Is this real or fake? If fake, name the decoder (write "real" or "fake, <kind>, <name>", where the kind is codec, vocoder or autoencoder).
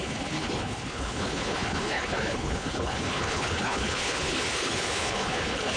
fake, codec, HILCodec